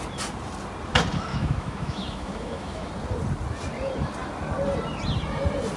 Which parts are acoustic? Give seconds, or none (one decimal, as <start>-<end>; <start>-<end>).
0.0-1.3; 2.9-5.8